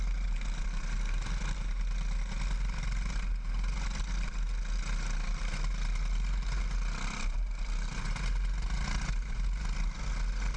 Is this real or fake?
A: real